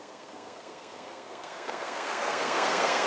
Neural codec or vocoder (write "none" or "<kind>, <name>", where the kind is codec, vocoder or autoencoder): codec, SNAC